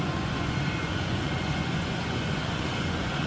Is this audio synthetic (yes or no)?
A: yes